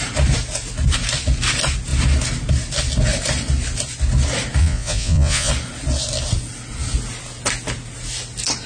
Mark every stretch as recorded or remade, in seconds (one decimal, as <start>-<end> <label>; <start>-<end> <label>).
0.0-4.6 recorded; 4.6-5.5 remade; 5.5-8.7 recorded

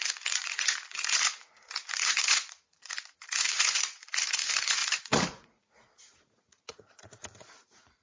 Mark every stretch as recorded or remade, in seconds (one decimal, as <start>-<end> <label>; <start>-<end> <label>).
0.0-8.0 remade

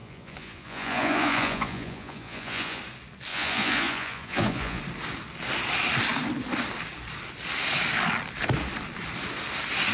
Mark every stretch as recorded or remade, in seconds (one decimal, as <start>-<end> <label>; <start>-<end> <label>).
0.0-2.8 remade; 2.8-3.3 recorded; 3.3-4.8 remade; 4.8-9.9 recorded

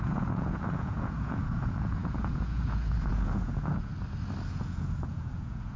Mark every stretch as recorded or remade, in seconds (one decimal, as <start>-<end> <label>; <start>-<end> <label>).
0.0-3.9 remade; 3.9-4.5 recorded; 4.5-5.8 remade

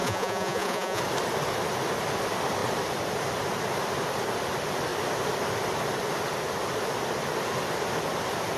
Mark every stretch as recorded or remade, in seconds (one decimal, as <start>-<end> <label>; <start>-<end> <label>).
0.0-1.0 remade; 1.0-8.6 recorded